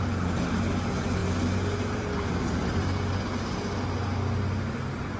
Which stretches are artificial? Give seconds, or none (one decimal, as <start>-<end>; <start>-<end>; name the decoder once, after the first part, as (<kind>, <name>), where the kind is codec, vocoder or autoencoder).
none